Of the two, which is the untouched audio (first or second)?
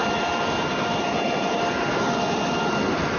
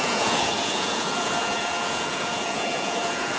first